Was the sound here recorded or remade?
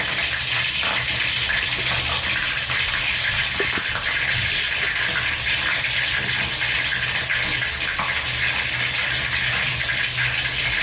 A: recorded